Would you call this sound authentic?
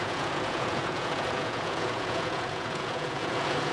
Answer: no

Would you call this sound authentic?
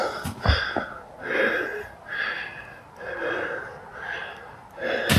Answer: yes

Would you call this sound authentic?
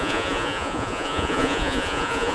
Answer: no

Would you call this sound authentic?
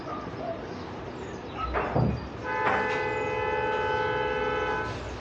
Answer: yes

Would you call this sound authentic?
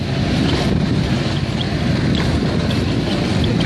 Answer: yes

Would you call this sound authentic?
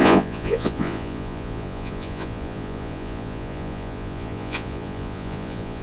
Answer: no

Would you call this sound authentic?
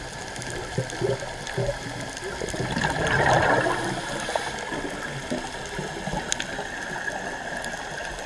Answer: yes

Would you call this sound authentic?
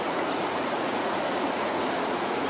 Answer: no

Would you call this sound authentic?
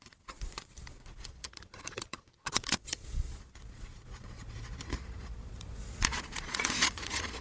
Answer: no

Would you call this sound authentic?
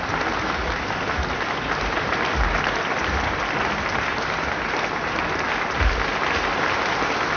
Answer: yes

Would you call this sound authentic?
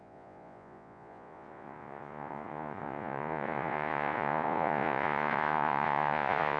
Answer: no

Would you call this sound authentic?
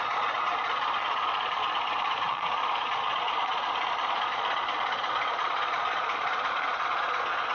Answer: no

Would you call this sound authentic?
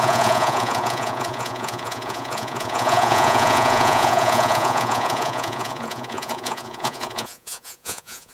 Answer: no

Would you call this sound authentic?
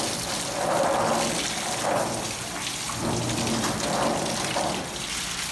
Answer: yes